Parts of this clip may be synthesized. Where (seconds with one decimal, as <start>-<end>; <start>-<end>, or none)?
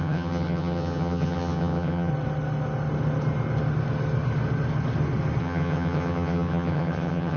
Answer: 0.0-2.1; 5.4-7.4